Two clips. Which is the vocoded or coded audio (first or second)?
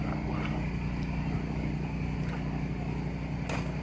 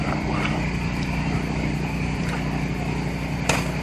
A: second